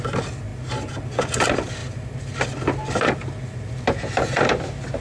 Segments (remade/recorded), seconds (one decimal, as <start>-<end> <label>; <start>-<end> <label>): 0.0-5.0 recorded